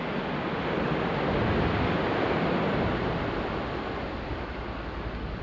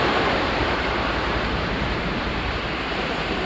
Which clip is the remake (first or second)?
second